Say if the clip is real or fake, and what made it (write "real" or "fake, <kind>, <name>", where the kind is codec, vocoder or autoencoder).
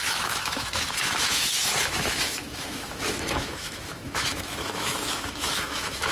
fake, autoencoder, DAC-VAE